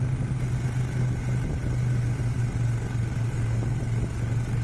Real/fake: real